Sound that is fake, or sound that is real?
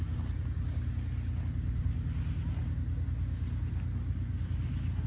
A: real